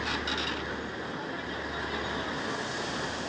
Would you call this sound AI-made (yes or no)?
no